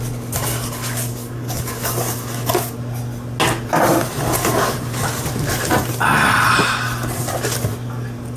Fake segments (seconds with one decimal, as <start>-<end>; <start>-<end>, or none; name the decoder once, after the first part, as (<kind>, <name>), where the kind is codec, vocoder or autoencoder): 0.8-2.8 (codec, DAC)